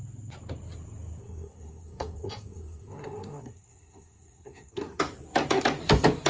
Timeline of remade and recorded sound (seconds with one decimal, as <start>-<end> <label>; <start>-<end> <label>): 0.0-1.2 recorded; 1.2-5.0 remade; 5.0-6.3 recorded